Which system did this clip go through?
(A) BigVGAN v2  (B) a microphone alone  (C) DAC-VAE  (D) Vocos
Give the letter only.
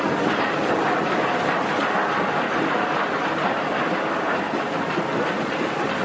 B